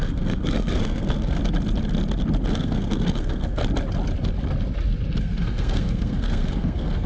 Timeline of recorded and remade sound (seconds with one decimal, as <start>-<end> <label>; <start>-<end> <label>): 0.0-1.4 remade; 1.4-2.5 recorded; 2.5-3.6 remade; 3.6-5.2 recorded; 5.2-7.1 remade